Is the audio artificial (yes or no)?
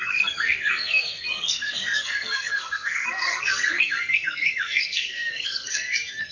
yes